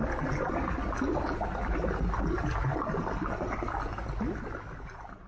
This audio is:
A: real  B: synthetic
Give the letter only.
A